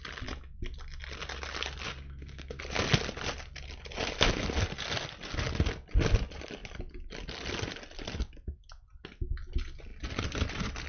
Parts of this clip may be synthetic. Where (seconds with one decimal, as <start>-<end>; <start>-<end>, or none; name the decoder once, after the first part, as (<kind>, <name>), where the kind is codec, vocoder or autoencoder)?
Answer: 1.9-2.6 (codec, SNAC)